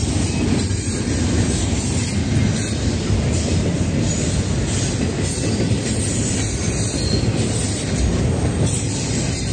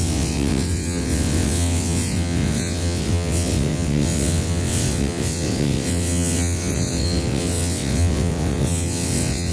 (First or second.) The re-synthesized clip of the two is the second